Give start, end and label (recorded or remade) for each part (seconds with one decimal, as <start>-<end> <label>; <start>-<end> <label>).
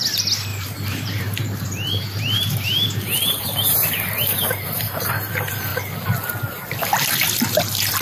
0.0-0.5 recorded; 0.5-5.3 remade; 5.3-8.0 recorded